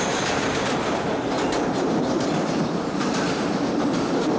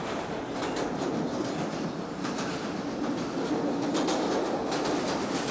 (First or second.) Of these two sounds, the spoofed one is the first